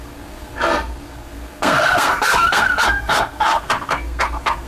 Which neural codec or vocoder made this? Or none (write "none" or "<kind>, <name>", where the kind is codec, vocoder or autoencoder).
codec, SNAC